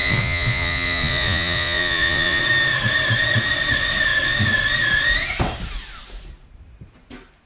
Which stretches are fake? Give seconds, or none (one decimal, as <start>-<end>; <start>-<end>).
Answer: 0.0-2.4